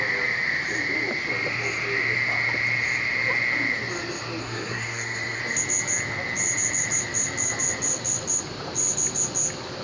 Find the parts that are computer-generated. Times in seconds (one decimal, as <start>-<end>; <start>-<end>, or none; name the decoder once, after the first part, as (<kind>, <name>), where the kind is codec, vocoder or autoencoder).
4.4-5.4 (codec, SNAC)